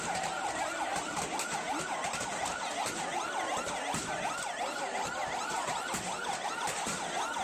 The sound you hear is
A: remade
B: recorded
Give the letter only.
B